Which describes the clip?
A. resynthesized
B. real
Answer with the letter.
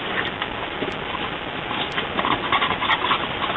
B